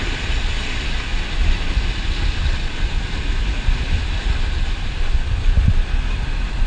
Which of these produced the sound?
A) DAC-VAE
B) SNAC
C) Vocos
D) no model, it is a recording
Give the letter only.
D